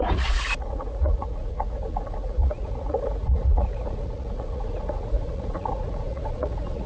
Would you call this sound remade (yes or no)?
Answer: yes